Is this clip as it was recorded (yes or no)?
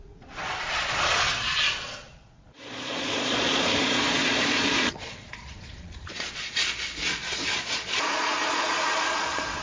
no